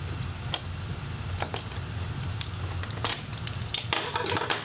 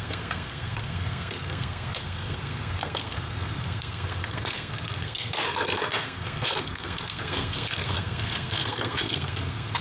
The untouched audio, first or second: first